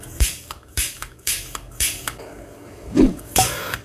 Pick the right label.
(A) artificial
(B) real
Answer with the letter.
A